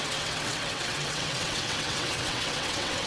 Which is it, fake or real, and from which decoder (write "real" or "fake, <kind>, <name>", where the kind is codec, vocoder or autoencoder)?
fake, vocoder, WaveNeXt